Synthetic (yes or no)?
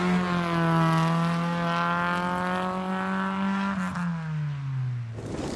no